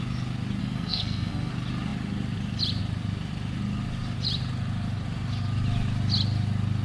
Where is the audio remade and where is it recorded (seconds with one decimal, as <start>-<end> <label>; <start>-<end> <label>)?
0.0-0.6 recorded; 0.6-1.5 remade; 1.5-6.8 recorded